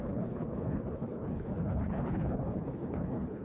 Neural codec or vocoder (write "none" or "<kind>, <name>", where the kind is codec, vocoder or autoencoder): codec, HILCodec